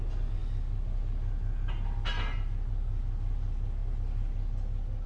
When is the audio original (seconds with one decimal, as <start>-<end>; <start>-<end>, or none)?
0.0-5.1